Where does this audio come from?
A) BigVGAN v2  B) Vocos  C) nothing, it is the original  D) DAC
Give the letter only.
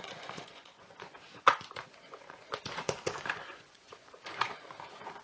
B